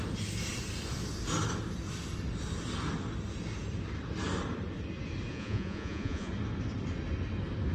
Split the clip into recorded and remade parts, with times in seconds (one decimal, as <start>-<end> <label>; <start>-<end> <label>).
0.0-5.3 recorded; 5.3-6.3 remade; 6.3-7.7 recorded